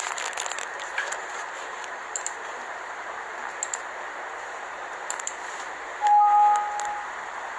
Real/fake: real